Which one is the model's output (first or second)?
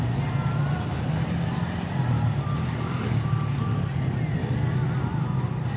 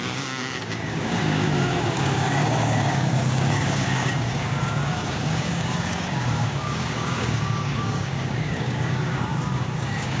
second